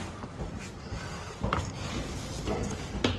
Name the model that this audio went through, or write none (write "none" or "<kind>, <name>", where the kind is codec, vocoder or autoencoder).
vocoder, BigVGAN v2